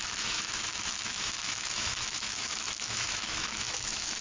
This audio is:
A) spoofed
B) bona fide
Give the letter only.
A